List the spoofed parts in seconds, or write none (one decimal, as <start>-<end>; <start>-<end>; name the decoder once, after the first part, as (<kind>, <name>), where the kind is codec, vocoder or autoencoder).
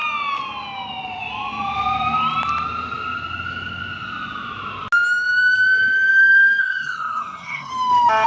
6.6-7.7 (codec, SNAC)